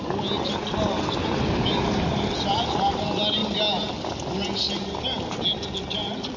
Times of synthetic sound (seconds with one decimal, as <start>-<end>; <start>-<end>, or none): none